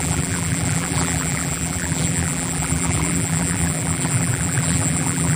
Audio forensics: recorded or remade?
remade